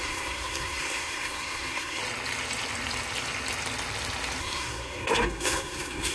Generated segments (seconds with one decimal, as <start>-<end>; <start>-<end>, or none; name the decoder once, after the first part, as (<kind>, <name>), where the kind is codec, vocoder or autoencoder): 0.0-2.0 (codec, SNAC); 4.4-6.1

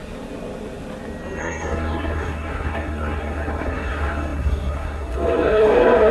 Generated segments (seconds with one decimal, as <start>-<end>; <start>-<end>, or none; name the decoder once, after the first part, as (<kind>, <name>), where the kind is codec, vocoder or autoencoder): 1.4-6.1 (codec, SNAC)

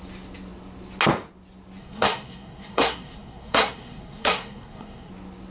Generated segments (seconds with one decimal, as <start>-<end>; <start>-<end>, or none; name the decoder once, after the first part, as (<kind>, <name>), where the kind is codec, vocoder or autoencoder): 1.8-5.1 (codec, SNAC)

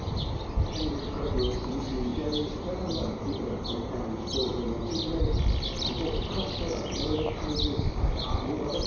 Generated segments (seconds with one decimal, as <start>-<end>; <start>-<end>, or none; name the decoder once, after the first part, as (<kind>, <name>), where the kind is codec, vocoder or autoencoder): none

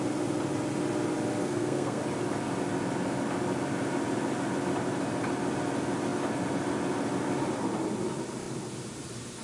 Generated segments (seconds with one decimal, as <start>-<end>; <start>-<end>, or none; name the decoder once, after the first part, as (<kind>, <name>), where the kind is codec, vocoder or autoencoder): 1.4-2.0 (codec, SNAC)

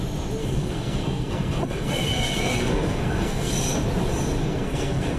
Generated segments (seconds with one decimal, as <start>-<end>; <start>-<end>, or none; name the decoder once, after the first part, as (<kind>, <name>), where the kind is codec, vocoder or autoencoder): 0.4-3.5 (codec, SNAC); 4.4-5.2